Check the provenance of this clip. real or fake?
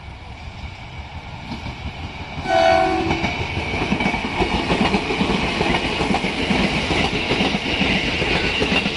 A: real